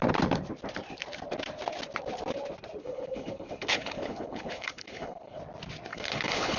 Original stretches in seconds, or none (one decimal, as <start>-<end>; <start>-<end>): 0.0-2.8; 5.4-5.9